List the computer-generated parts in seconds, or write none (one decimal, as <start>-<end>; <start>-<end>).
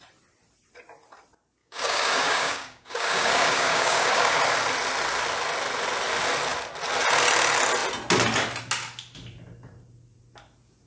1.6-4.4